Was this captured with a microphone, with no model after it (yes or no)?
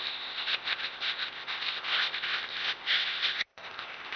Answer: no